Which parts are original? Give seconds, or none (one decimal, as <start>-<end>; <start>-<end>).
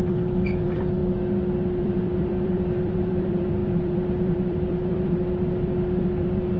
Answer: 1.0-1.8